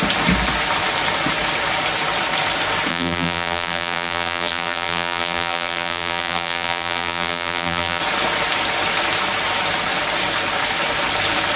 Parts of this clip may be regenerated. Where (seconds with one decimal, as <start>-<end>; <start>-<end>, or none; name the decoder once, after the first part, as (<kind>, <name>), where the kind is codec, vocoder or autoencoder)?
2.9-8.0 (vocoder, BigVGAN v2)